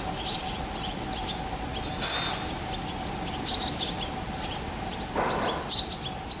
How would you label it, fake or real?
real